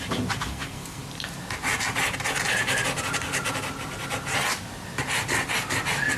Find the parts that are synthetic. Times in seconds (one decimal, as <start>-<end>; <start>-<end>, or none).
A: 0.4-1.0